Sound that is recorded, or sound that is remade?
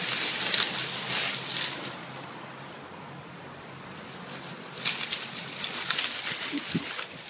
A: recorded